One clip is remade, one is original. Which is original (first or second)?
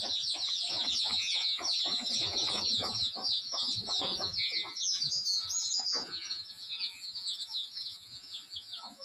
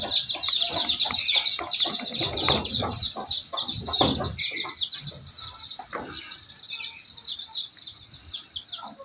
second